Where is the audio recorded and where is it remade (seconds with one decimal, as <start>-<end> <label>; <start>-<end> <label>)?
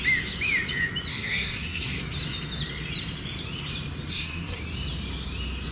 0.0-1.1 recorded; 1.1-2.0 remade; 2.0-4.1 recorded; 4.1-4.6 remade; 4.6-5.7 recorded